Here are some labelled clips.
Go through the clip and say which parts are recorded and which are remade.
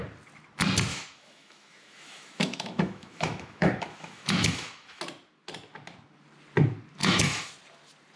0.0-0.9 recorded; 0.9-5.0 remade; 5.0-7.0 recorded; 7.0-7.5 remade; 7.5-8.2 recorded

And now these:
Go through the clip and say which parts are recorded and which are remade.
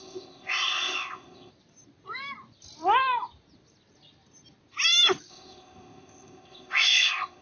0.0-1.5 remade; 1.5-5.3 recorded; 5.3-7.4 remade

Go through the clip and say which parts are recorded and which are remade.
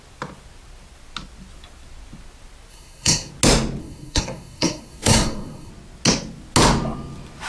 0.0-2.7 recorded; 2.7-3.3 remade; 3.3-3.8 recorded; 3.8-5.7 remade; 5.7-7.5 recorded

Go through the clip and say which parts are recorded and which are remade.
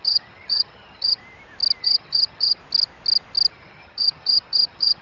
0.0-1.2 remade; 1.2-1.8 recorded; 1.8-2.6 remade; 2.6-3.5 recorded; 3.5-5.0 remade